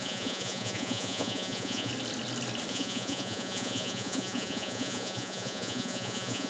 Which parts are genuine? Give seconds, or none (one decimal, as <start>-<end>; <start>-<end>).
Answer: 1.9-2.7